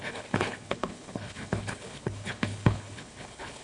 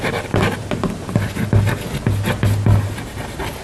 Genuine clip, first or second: second